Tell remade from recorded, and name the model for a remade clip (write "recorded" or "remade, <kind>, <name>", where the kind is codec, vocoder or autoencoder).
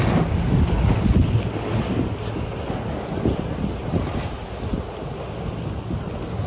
recorded